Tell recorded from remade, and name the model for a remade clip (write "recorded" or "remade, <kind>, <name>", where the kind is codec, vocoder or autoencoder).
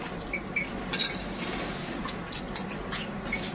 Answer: recorded